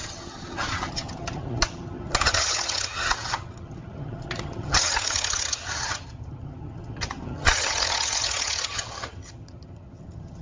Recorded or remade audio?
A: remade